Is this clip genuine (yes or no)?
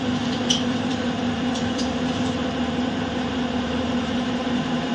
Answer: no